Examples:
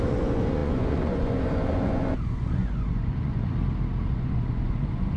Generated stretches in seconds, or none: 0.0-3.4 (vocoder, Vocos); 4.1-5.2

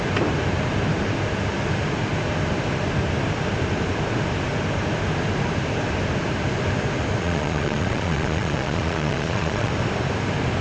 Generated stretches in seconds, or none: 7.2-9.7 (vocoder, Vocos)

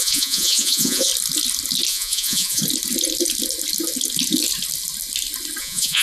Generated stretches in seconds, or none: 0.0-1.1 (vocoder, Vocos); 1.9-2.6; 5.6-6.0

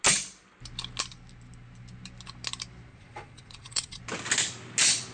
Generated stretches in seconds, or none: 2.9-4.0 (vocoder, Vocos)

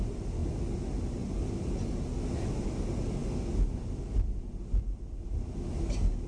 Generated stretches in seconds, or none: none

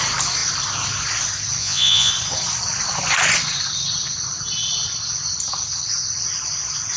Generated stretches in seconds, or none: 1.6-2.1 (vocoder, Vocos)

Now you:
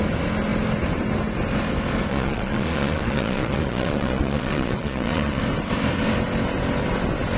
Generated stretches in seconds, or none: 2.1-5.4 (vocoder, Vocos)

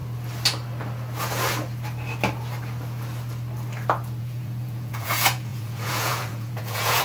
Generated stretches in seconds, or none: 4.2-7.0 (vocoder, Vocos)